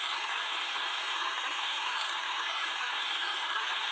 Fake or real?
fake